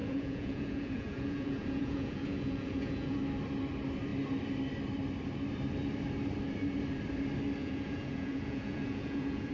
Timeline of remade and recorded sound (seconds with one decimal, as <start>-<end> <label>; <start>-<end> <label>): 0.0-3.2 remade; 3.2-7.6 recorded; 7.6-9.5 remade